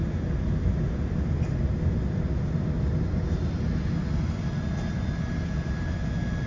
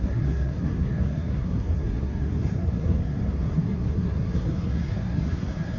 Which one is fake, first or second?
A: second